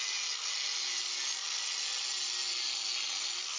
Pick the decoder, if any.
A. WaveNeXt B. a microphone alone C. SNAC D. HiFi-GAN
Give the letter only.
B